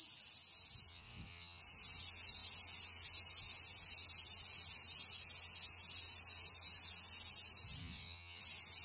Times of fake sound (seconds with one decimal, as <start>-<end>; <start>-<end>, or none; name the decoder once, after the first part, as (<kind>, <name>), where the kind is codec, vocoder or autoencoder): 0.9-1.6 (vocoder, WaveNeXt); 7.8-8.4